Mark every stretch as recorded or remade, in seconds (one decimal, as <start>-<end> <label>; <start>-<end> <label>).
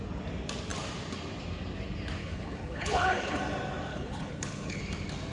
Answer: 0.0-2.2 recorded; 2.2-3.4 remade; 3.4-3.9 recorded; 3.9-4.8 remade; 4.8-5.3 recorded